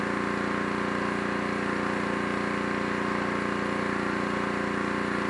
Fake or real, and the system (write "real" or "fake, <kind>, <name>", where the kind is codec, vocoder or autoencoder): real